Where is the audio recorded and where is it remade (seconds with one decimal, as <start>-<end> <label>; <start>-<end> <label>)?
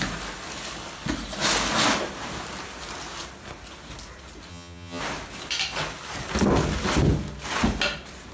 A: 0.0-4.5 recorded; 4.5-5.0 remade; 5.0-8.3 recorded